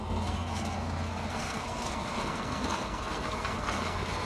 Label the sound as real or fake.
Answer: fake